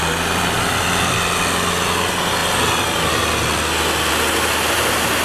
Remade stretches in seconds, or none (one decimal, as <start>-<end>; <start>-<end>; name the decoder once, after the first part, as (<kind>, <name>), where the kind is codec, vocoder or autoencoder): none